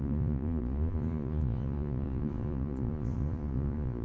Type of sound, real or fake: fake